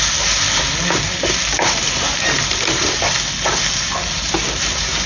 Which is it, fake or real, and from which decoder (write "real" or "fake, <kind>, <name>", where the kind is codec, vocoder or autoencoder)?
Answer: real